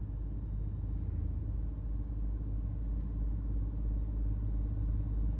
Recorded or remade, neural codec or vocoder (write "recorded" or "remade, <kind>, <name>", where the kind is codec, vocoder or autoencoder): recorded